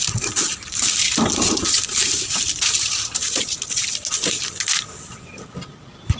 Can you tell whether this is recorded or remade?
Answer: recorded